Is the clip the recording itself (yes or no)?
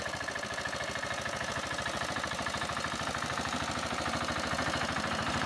no